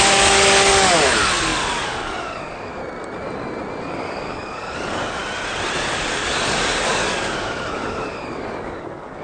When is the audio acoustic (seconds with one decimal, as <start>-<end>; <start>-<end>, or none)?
2.8-3.8; 5.2-5.8